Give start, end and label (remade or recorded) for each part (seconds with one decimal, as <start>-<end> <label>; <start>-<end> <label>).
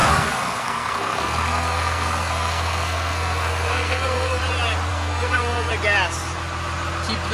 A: 0.0-4.4 remade; 4.4-4.9 recorded; 4.9-5.7 remade; 5.7-7.3 recorded